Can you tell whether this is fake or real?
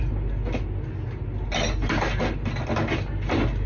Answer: real